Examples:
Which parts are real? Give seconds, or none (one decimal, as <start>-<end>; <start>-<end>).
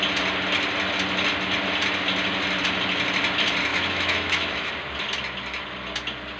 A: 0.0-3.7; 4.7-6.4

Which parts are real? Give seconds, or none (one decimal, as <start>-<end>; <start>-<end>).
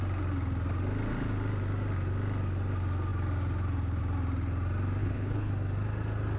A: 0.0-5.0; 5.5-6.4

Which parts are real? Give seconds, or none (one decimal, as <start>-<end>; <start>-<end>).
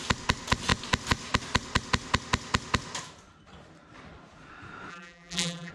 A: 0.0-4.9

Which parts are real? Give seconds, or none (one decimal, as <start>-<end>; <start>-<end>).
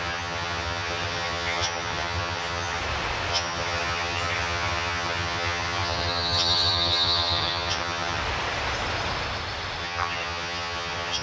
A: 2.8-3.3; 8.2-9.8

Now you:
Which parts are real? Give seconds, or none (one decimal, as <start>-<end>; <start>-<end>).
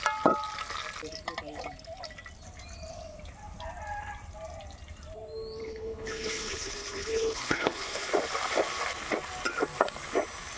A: 0.0-5.6; 8.1-10.6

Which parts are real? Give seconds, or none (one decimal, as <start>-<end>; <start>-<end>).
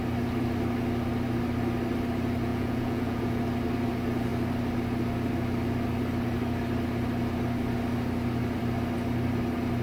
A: 0.0-2.5; 3.4-9.8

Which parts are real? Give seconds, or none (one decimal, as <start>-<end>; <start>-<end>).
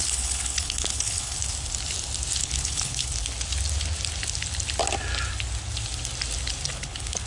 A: 1.4-2.4; 3.1-6.7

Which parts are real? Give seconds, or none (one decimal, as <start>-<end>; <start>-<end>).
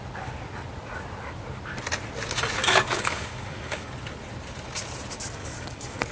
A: 0.0-2.6; 3.9-5.4